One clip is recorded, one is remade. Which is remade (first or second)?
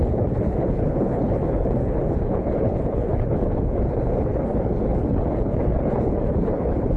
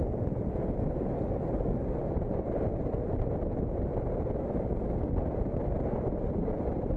first